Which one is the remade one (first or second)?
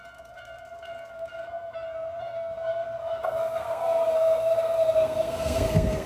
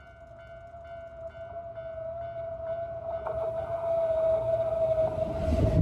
first